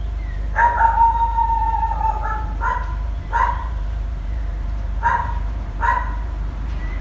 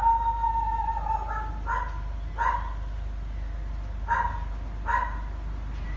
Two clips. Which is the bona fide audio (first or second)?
second